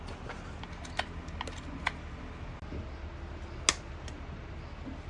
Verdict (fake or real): real